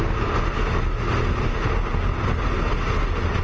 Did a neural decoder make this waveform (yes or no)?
no